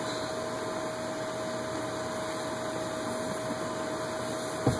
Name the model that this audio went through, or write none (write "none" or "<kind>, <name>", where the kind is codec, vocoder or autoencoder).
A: none